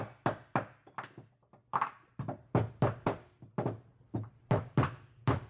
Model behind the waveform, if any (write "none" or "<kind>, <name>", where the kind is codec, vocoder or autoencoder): vocoder, BigVGAN v2